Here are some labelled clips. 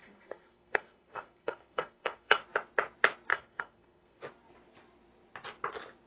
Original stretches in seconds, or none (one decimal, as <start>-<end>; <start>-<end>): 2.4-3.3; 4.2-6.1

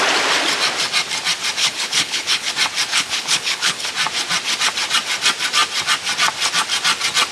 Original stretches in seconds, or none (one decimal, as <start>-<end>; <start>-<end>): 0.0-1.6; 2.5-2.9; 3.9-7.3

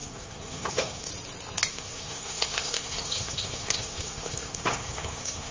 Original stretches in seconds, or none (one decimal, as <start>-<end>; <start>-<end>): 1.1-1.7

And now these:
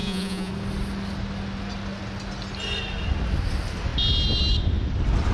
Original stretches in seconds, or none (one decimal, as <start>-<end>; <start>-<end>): 0.5-5.3

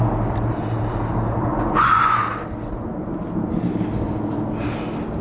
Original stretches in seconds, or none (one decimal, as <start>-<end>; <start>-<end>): 0.0-1.5; 2.2-5.2